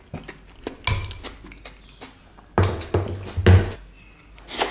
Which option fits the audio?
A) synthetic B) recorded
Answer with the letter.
B